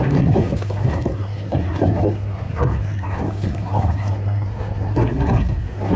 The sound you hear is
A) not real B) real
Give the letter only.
A